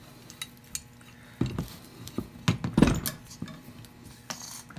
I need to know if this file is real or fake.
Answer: real